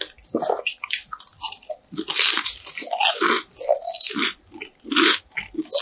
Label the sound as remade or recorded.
recorded